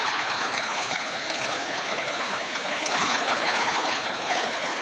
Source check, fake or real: fake